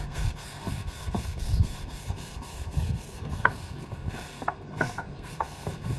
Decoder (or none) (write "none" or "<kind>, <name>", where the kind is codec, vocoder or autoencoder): codec, SNAC